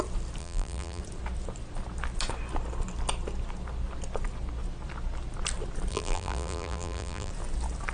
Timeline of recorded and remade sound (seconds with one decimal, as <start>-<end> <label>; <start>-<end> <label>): 0.0-0.4 recorded; 0.4-1.0 remade; 1.0-5.9 recorded; 5.9-7.3 remade; 7.3-7.9 recorded